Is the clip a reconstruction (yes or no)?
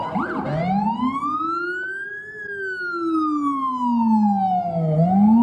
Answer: no